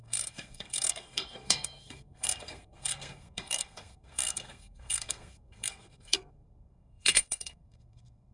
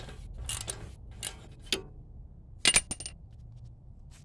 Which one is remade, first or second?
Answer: first